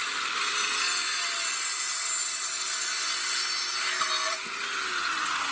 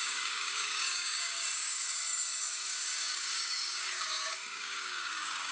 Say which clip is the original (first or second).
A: first